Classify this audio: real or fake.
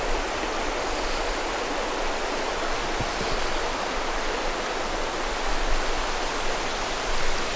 real